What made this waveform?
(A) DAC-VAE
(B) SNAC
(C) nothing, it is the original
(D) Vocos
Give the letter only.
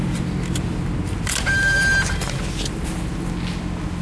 C